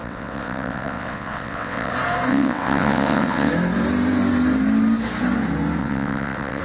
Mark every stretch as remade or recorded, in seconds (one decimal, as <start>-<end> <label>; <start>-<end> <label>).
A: 0.0-1.9 remade; 1.9-2.3 recorded; 2.3-3.5 remade; 3.5-5.8 recorded; 5.8-6.6 remade